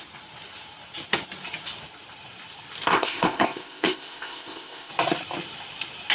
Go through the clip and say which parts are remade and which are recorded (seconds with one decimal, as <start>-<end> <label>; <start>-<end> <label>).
0.0-2.9 recorded; 2.9-4.9 remade; 4.9-6.1 recorded